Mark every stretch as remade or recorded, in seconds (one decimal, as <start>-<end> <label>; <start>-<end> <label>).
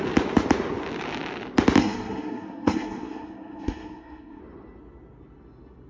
0.0-1.8 recorded; 1.8-4.4 remade; 4.4-5.9 recorded